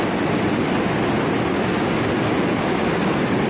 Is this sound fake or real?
real